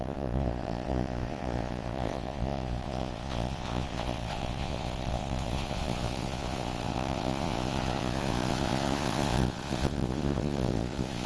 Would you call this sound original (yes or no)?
no